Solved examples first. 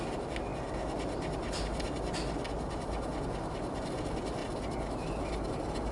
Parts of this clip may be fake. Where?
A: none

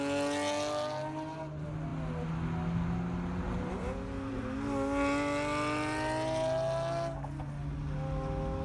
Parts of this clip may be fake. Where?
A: none

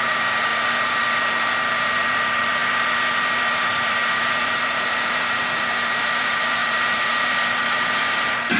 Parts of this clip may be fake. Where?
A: 0.0-8.6 (vocoder, BigVGAN v2)

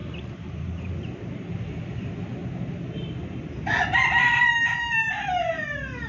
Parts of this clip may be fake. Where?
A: 0.0-0.9 (vocoder, BigVGAN v2)

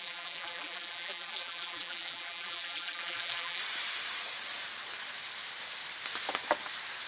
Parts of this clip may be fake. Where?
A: 0.0-3.6 (vocoder, BigVGAN v2)